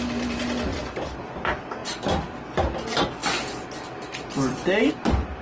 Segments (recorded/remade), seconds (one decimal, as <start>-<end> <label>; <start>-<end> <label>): 0.0-5.4 recorded